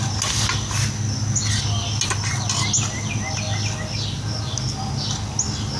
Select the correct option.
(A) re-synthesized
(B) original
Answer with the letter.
B